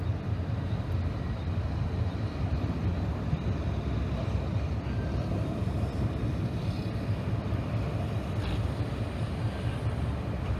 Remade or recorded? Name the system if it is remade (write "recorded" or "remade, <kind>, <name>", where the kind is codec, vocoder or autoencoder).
recorded